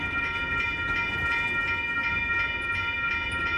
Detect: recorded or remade recorded